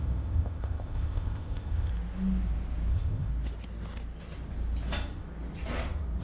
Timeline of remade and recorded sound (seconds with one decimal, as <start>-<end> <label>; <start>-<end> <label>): 0.0-1.9 remade; 1.9-2.9 recorded; 2.9-3.3 remade; 3.3-6.2 recorded